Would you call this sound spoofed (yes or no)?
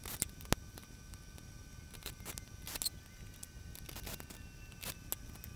no